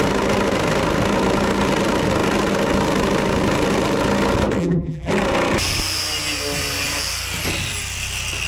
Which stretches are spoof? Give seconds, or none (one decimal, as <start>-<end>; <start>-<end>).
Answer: 4.6-5.1